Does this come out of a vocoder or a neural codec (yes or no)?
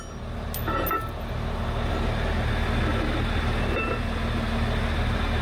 no